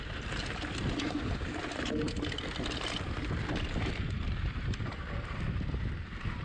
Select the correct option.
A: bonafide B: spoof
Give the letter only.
A